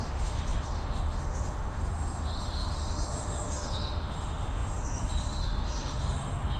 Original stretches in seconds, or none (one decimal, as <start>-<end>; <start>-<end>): none